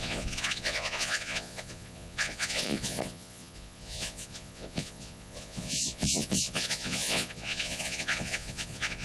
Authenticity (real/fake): fake